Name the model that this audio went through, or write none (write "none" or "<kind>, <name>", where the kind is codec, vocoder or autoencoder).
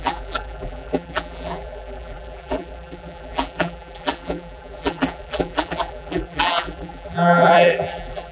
vocoder, BigVGAN v2